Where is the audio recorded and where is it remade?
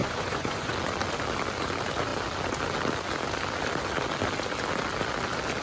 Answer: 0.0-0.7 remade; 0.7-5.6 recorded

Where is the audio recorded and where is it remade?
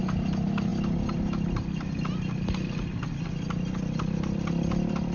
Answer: 0.0-5.1 recorded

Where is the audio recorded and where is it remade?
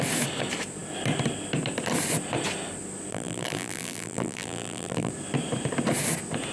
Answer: 0.0-3.1 recorded; 3.1-5.1 remade; 5.1-6.5 recorded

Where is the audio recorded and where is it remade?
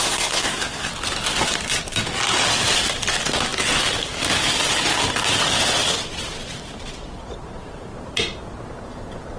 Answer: 0.0-0.9 remade; 0.9-9.4 recorded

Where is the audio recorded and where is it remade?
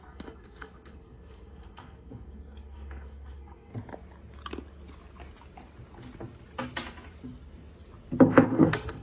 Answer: 0.0-3.7 remade; 3.7-8.5 recorded; 8.5-9.0 remade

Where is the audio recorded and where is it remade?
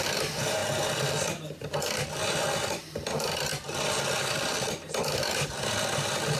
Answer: 0.0-0.6 remade; 0.6-1.5 recorded; 1.5-6.4 remade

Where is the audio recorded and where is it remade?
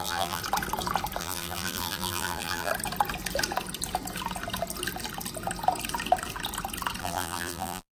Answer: 0.0-0.4 remade; 0.4-1.2 recorded; 1.2-2.7 remade; 2.7-7.0 recorded; 7.0-8.0 remade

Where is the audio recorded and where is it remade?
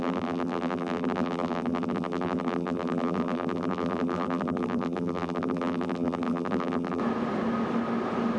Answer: 0.0-7.0 remade; 7.0-8.4 recorded